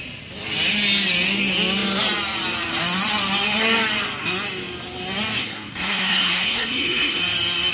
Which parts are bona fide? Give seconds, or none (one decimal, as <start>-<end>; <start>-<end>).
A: 0.0-5.4; 7.2-7.7